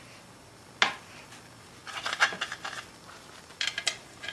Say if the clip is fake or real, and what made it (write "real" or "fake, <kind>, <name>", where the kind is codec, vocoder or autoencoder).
real